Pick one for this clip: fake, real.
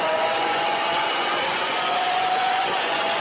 fake